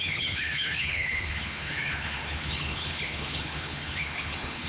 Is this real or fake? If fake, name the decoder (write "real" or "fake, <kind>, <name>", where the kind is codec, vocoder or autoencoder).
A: fake, codec, HILCodec